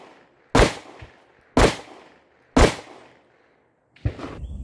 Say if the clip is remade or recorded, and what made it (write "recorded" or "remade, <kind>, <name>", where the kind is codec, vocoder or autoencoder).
recorded